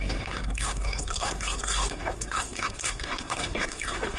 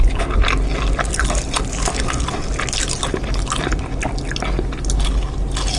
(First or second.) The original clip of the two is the second